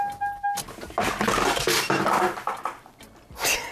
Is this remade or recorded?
recorded